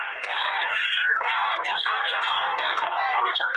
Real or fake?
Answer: fake